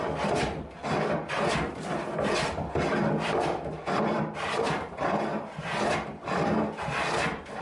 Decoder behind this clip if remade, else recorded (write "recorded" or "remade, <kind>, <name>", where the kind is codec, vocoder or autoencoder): remade, vocoder, BigVGAN v2